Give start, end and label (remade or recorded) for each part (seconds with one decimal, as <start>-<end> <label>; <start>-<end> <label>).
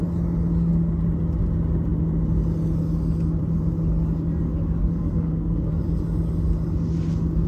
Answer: 0.0-4.8 recorded; 4.8-5.7 remade; 5.7-7.5 recorded